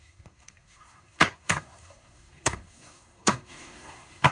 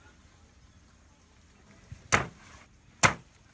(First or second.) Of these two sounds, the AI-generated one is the first